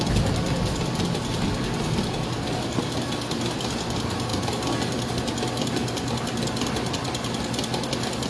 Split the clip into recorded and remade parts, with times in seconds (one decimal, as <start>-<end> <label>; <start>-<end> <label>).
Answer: 0.0-8.3 recorded